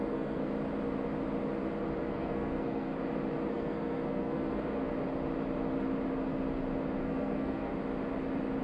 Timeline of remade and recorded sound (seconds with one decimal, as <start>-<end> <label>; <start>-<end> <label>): 0.0-0.5 remade; 0.5-2.1 recorded; 2.1-2.9 remade; 2.9-3.5 recorded; 3.5-4.9 remade; 4.9-7.0 recorded; 7.0-7.7 remade; 7.7-8.6 recorded